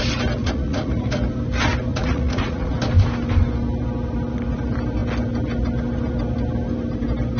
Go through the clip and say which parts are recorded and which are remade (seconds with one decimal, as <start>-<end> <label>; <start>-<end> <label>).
0.0-0.4 recorded; 0.4-1.1 remade; 1.1-1.9 recorded; 1.9-2.7 remade; 2.7-7.4 recorded